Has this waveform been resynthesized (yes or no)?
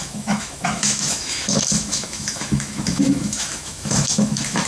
yes